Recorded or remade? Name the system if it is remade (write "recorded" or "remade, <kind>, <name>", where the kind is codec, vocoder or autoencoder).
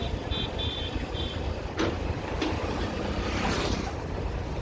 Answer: remade, vocoder, BigVGAN v2